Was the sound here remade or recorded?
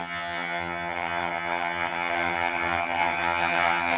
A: remade